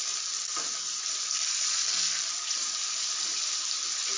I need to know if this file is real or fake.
real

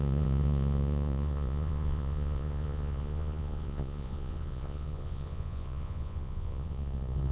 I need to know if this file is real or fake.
fake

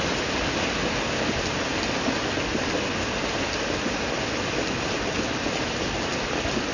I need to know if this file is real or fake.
real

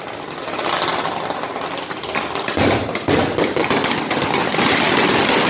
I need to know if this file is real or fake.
real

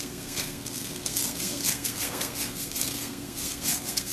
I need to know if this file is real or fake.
fake